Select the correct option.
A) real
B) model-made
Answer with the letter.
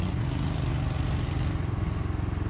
A